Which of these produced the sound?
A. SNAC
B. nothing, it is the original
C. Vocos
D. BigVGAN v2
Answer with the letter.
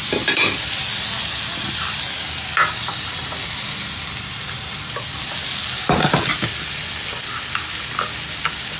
B